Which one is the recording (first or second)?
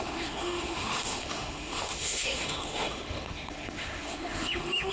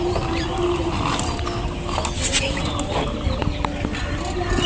second